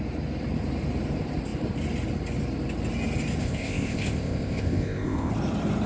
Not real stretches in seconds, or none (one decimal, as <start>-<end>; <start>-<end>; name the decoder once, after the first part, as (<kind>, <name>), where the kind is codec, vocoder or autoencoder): 3.4-5.3 (codec, ZipCodec)